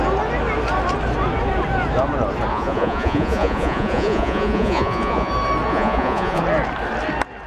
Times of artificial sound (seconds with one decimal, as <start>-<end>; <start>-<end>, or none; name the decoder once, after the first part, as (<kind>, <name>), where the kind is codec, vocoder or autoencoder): 2.5-5.3 (vocoder, Vocos); 5.7-6.4

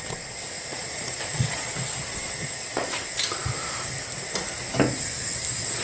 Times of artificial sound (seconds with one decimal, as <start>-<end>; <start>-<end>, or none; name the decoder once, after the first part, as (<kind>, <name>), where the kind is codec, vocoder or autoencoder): 0.7-1.7 (vocoder, Vocos); 2.1-2.9